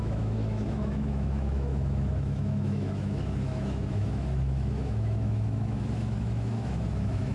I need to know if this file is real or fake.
fake